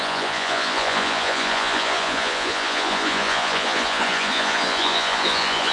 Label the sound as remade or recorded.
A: remade